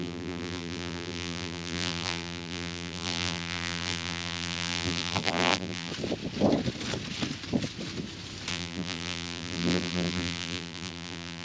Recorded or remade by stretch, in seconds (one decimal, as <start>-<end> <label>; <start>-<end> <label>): 0.0-5.9 remade; 5.9-8.5 recorded; 8.5-11.4 remade